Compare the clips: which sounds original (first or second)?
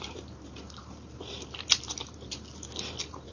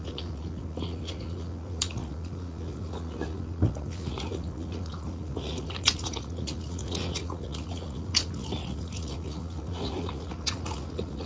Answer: first